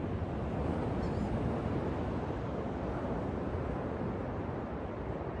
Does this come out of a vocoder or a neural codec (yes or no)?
no